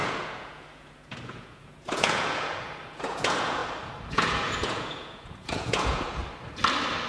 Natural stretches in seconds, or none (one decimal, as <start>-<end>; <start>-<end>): 3.6-4.1; 6.2-7.1